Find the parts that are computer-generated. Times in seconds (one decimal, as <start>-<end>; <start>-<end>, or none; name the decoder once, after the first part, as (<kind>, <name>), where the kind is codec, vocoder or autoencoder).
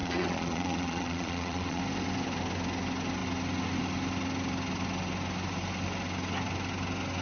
0.0-1.8 (vocoder, Vocos)